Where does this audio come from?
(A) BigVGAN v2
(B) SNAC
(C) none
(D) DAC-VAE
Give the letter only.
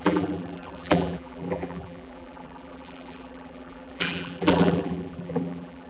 A